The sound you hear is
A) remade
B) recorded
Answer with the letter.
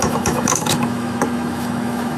A